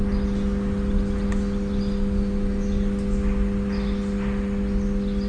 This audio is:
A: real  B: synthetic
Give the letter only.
A